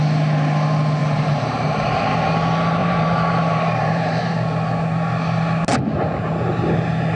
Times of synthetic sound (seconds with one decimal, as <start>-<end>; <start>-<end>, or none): 1.0-2.2; 2.8-4.2